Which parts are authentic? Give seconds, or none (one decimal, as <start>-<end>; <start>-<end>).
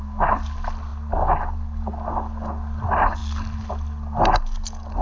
0.0-5.0